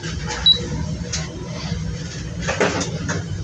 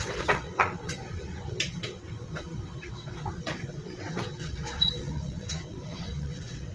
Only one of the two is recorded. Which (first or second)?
first